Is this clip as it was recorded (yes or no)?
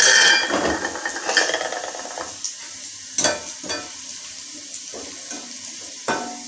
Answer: yes